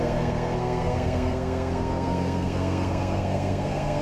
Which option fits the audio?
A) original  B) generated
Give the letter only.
B